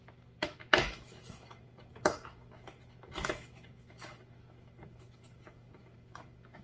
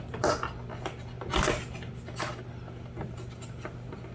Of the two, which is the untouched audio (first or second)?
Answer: second